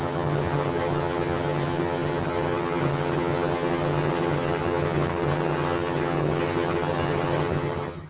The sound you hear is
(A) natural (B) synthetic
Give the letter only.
B